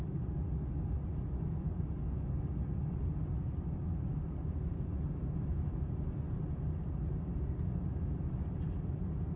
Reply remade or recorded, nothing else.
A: recorded